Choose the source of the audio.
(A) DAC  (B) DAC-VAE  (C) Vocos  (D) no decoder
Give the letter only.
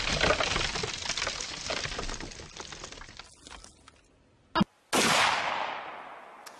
D